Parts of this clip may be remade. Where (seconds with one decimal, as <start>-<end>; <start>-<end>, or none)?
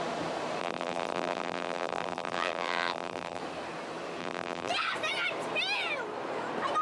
0.6-3.4; 4.2-4.7